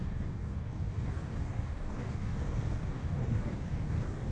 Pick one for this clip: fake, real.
fake